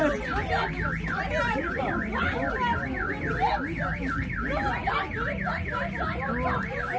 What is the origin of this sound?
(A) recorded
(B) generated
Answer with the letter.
A